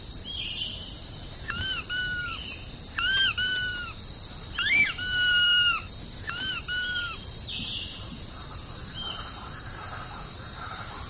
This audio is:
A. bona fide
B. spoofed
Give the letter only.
B